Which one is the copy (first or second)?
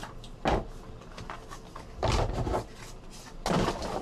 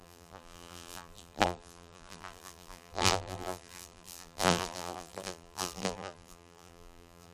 second